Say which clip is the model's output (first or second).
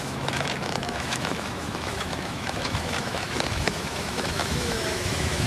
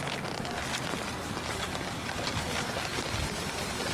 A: first